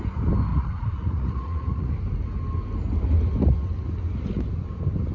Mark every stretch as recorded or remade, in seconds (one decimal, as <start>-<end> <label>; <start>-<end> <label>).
0.0-0.5 recorded; 0.5-1.9 remade; 1.9-5.1 recorded